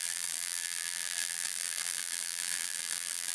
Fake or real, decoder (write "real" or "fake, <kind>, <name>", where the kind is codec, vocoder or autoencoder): fake, vocoder, BigVGAN v2